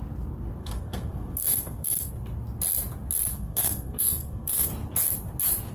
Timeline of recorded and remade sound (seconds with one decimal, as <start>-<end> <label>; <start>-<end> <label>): 0.0-0.6 recorded; 0.6-2.1 remade; 2.1-3.3 recorded; 3.3-4.7 remade; 4.7-5.7 recorded